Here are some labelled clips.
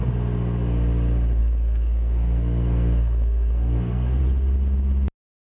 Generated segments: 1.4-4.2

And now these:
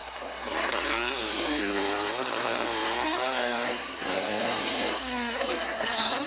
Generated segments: 0.0-6.3

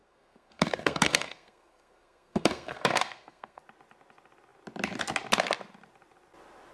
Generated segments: 0.0-3.6

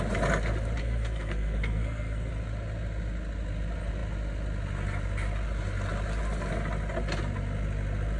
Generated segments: 0.8-2.3

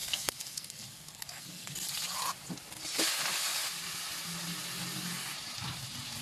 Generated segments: 0.0-1.7

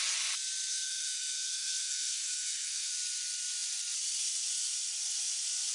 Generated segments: 0.7-2.9

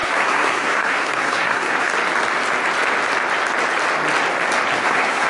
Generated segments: 0.0-1.9; 4.8-5.3

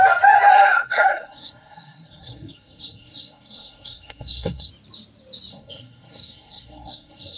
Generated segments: 0.5-4.7; 5.5-7.4